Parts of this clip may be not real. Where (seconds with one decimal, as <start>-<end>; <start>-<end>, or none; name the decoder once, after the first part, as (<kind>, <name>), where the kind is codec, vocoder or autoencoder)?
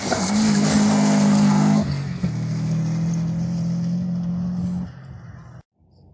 0.0-2.8 (codec, SNAC)